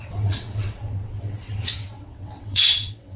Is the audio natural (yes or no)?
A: no